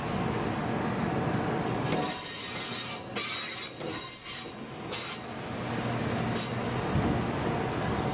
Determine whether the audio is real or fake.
real